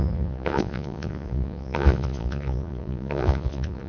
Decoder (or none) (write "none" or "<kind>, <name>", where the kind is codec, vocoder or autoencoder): vocoder, Vocos